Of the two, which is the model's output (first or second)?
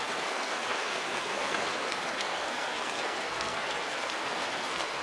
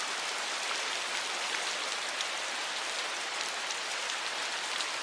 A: first